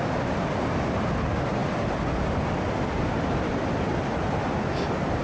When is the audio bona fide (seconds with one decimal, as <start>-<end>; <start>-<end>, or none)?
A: 0.0-5.2